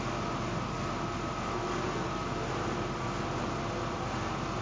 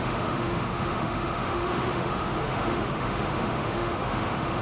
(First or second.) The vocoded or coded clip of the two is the second